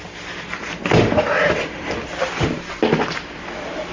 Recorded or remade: recorded